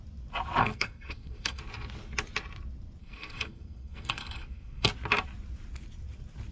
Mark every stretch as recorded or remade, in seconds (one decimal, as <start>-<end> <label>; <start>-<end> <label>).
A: 0.0-0.6 recorded; 0.6-1.6 remade; 1.6-3.0 recorded; 3.0-4.9 remade; 4.9-6.5 recorded